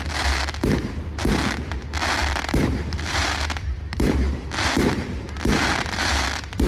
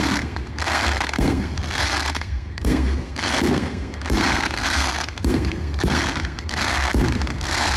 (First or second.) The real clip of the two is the first